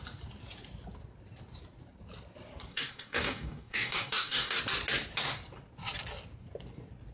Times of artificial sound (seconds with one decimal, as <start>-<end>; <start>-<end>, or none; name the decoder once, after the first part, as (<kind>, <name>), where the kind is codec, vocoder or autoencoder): 2.7-4.6 (codec, DAC)